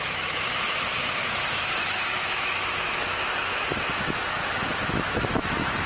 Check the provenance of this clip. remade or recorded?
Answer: remade